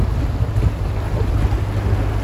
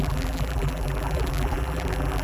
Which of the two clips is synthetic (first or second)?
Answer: second